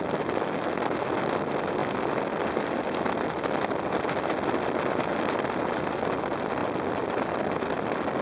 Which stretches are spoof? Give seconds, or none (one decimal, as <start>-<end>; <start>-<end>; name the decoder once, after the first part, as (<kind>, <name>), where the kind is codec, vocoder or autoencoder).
none